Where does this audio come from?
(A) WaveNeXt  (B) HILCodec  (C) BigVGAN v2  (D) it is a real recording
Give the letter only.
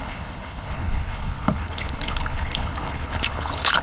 B